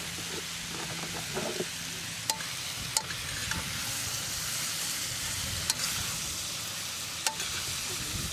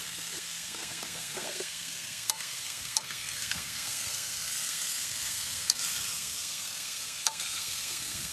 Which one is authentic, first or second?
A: first